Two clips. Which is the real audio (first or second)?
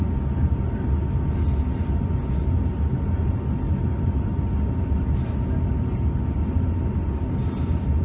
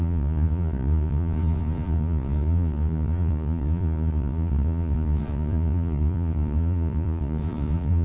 first